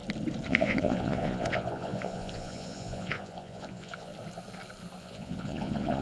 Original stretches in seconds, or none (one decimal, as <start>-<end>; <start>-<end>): 0.0-0.5; 4.1-5.0